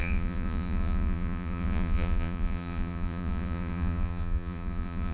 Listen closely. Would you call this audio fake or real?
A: fake